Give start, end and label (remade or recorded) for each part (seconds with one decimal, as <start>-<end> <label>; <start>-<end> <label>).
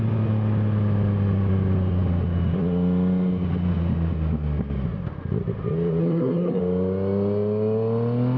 0.0-6.0 recorded; 6.0-6.6 remade; 6.6-8.4 recorded